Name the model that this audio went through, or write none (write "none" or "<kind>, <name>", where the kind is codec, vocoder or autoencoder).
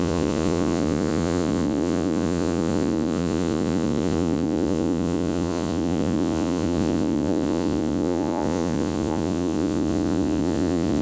vocoder, Vocos